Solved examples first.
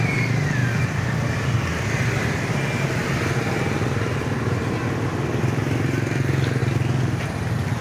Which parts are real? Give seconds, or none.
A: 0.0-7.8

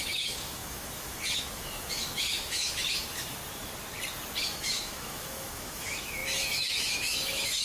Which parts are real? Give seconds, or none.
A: 3.4-4.4

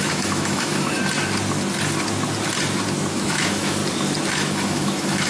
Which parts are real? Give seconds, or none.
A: 1.0-3.1; 3.8-4.3